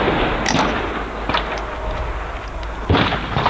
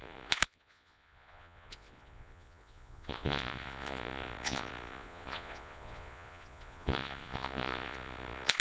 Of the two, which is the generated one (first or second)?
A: second